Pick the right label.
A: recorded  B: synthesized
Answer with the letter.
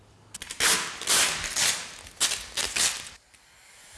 A